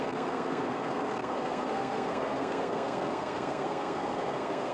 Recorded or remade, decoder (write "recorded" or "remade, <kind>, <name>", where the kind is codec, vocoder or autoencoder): remade, codec, SNAC